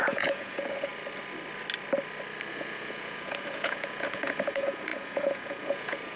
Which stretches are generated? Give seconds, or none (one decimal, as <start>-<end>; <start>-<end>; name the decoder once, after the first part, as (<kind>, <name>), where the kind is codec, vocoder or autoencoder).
0.0-0.9 (vocoder, Vocos); 2.5-6.2